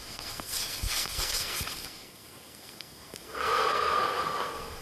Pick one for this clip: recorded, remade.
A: remade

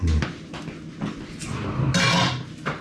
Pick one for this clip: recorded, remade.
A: recorded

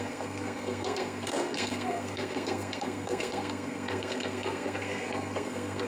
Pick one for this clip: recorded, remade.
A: remade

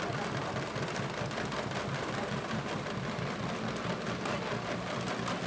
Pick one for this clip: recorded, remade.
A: recorded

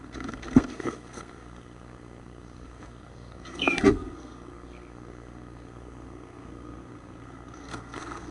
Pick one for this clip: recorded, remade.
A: remade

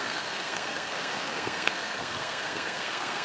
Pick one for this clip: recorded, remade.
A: remade